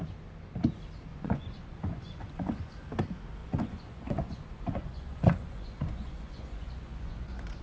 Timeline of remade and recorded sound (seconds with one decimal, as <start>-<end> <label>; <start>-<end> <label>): 0.0-1.1 recorded; 1.1-2.7 remade; 2.7-3.4 recorded; 3.4-7.6 remade